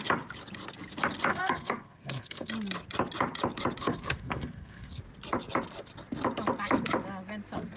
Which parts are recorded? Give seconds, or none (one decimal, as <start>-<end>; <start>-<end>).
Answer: 0.0-1.3; 2.5-3.8; 5.0-7.8